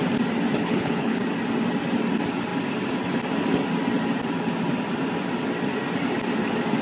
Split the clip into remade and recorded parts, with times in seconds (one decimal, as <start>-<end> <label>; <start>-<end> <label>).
0.0-0.6 recorded; 0.6-1.2 remade; 1.2-6.8 recorded